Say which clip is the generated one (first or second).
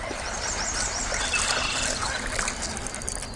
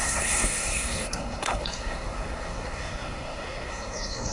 second